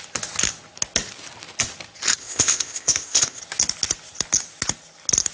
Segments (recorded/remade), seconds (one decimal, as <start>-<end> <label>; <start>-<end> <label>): 0.0-2.2 recorded; 2.2-3.4 remade; 3.4-5.3 recorded